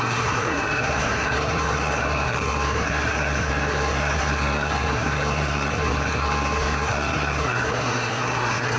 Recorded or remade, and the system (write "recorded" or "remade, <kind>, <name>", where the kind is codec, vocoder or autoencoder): remade, codec, SNAC